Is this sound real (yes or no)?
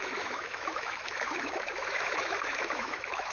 no